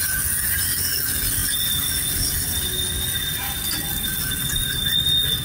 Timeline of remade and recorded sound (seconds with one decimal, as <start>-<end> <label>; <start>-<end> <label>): 0.0-5.4 recorded